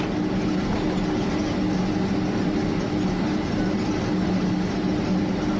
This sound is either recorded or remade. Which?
recorded